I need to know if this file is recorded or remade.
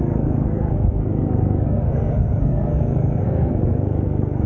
remade